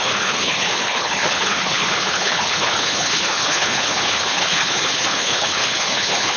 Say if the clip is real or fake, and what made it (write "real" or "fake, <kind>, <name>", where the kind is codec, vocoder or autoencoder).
fake, codec, HILCodec